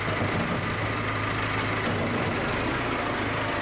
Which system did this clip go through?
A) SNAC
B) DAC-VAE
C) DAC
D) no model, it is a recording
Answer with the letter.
D